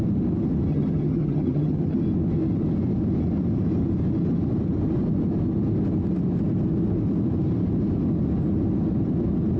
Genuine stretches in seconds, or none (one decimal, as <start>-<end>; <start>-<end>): 0.0-0.7; 2.0-9.6